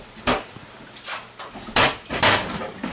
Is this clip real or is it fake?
real